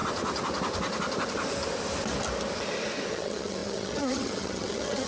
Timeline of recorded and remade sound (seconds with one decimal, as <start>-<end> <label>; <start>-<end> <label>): 0.0-3.1 recorded; 3.1-5.1 remade

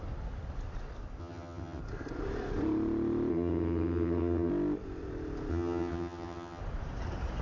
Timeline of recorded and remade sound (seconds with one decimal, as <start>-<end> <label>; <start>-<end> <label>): 0.0-1.2 recorded; 1.2-1.8 remade; 1.8-3.3 recorded; 3.3-4.5 remade; 4.5-5.5 recorded; 5.5-6.6 remade; 6.6-7.4 recorded